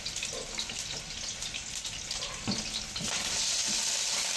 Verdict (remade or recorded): recorded